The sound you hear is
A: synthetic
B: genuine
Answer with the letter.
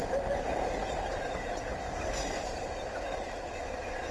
B